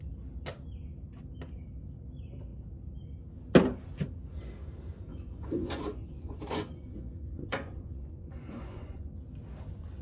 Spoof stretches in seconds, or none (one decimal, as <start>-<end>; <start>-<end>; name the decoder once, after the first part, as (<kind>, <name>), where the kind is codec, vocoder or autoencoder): 5.1-9.1 (vocoder, Vocos)